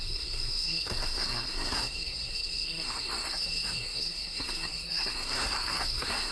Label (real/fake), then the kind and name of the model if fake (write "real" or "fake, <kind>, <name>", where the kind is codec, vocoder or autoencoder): fake, codec, SNAC